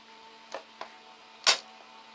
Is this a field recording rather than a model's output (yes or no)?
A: yes